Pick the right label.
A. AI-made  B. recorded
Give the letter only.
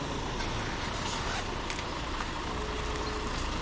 B